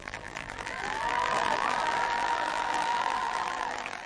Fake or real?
fake